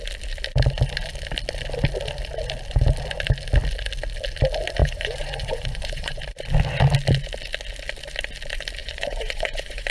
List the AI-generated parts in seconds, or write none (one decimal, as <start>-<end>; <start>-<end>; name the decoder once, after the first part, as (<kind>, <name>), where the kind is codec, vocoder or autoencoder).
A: 4.8-6.2 (vocoder, Vocos); 8.8-9.9